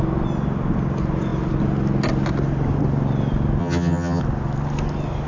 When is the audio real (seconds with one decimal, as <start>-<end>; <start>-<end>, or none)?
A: 0.0-3.6; 4.2-5.3

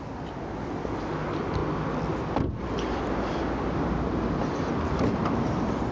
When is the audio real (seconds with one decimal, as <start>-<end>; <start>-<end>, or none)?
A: 0.0-5.9

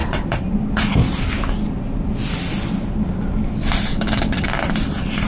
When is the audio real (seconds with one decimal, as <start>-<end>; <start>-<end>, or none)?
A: 0.0-3.9; 4.6-5.3

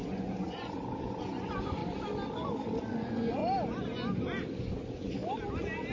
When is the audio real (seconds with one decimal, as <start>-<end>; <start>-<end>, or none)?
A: 1.8-2.9; 3.4-4.6; 5.2-5.9

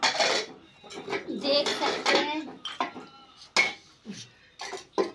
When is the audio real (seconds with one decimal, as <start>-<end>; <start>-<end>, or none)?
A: 0.0-5.1

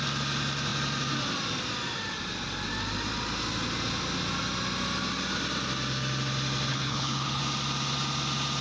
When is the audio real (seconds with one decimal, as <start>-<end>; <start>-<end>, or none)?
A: 0.0-6.7; 7.4-8.6